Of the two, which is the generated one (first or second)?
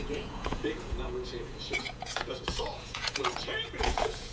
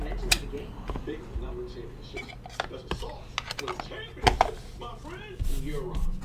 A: first